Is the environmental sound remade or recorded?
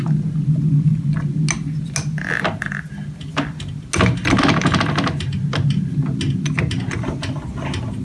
recorded